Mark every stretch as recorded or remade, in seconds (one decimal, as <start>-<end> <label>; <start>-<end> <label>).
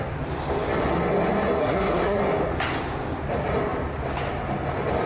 0.0-1.6 recorded; 1.6-2.2 remade; 2.2-5.1 recorded